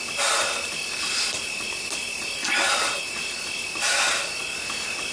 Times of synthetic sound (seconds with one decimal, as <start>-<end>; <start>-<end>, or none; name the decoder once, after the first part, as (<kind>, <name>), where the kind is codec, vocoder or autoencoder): none